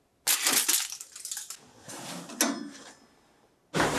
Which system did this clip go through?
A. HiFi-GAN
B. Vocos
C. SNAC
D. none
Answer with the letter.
D